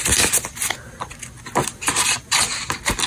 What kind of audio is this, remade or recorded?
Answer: recorded